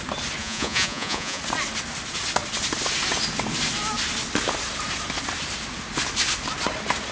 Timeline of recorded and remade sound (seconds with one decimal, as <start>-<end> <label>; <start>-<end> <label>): 0.0-0.4 recorded; 0.4-1.4 remade; 1.4-7.1 recorded